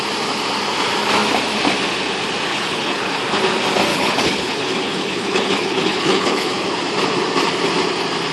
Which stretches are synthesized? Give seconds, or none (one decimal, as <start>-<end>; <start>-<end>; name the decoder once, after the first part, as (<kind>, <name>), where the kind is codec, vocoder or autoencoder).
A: 2.5-3.2 (codec, HILCodec); 3.9-6.7